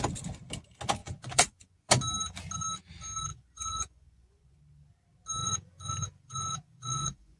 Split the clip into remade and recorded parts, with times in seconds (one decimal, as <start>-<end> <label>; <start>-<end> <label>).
0.0-1.0 recorded; 1.0-1.9 remade; 1.9-3.3 recorded; 3.3-4.6 remade; 4.6-5.4 recorded; 5.4-7.4 remade